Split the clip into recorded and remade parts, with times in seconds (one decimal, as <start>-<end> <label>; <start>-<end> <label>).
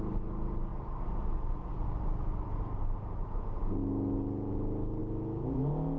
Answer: 0.0-6.0 recorded